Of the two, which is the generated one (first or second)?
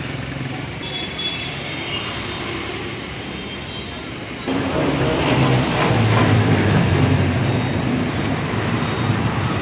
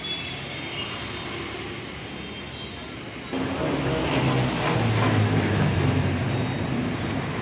first